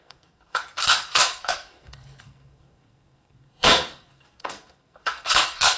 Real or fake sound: fake